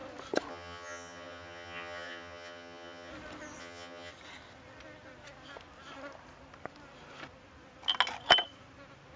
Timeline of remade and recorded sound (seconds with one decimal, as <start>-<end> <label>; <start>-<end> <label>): 0.0-0.5 recorded; 0.5-3.1 remade; 3.1-3.6 recorded; 3.6-4.1 remade; 4.1-9.2 recorded